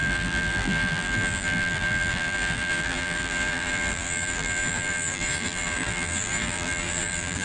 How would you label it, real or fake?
fake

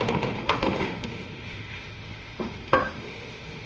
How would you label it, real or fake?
fake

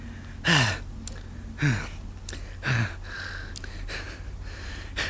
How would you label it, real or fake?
real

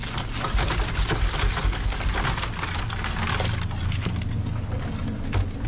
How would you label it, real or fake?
real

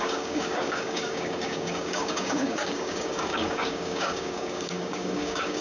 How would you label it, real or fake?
fake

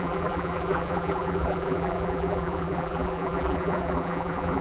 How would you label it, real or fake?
fake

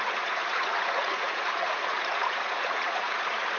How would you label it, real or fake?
fake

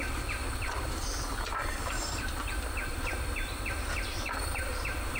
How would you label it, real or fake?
real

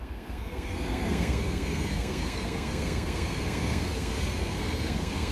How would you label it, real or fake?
fake